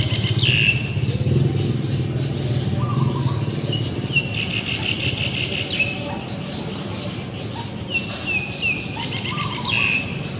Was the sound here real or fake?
real